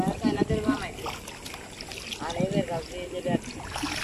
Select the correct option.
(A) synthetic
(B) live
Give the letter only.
B